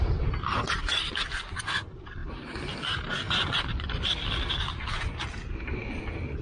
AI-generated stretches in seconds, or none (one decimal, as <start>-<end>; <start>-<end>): none